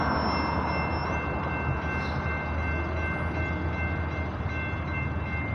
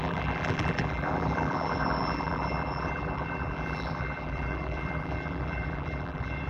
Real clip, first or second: first